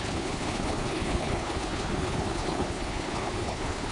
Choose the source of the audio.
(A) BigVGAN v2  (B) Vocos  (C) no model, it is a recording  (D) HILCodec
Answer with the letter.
D